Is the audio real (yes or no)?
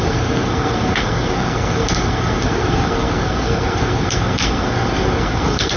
no